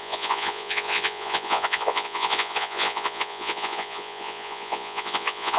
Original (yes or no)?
no